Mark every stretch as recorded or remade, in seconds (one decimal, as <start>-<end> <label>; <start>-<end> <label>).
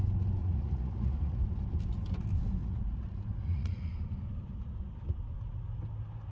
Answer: 0.0-0.4 recorded; 0.4-1.4 remade; 1.4-2.6 recorded; 2.6-3.9 remade; 3.9-6.3 recorded